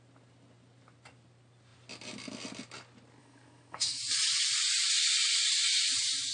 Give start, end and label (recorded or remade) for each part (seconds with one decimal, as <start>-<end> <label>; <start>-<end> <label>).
0.0-3.2 recorded; 3.2-4.0 remade; 4.0-6.3 recorded